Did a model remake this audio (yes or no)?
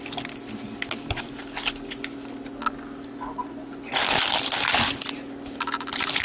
no